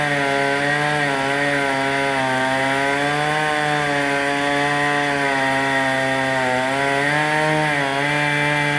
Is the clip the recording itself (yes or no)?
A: yes